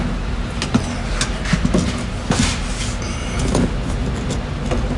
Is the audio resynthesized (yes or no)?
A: no